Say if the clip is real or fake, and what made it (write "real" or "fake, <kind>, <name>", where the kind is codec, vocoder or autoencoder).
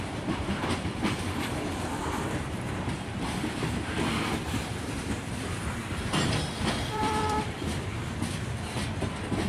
fake, vocoder, BigVGAN v2